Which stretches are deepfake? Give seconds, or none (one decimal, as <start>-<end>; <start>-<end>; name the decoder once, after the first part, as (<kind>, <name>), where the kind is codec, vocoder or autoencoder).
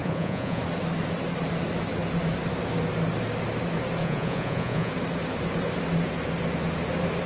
0.0-0.6 (vocoder, Vocos); 4.0-4.9